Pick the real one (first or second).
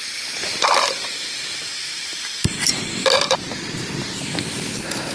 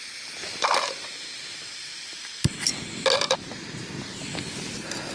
second